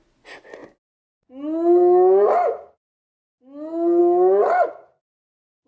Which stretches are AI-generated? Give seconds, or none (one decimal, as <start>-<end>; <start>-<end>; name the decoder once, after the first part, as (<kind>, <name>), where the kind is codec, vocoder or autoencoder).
none